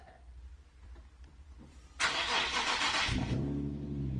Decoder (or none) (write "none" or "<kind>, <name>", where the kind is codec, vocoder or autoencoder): vocoder, BigVGAN v2